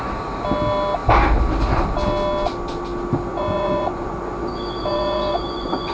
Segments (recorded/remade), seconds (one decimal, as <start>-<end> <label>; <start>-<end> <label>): 0.0-3.3 recorded; 3.3-5.9 remade